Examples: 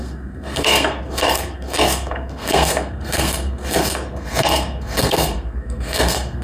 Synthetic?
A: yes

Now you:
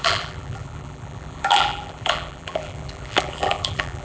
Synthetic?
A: yes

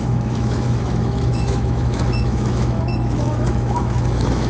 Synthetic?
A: yes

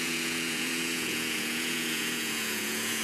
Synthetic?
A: yes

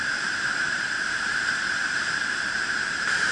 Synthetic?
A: yes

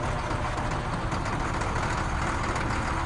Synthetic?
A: no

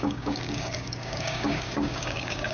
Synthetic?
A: yes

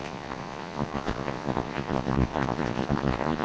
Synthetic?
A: yes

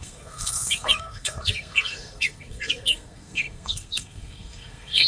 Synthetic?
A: yes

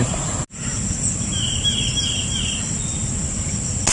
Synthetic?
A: no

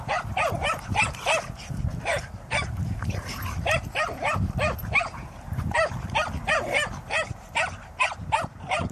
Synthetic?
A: yes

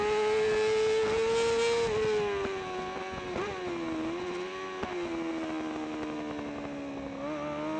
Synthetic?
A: no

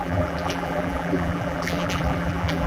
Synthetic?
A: yes